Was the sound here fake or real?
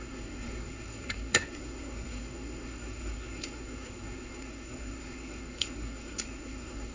fake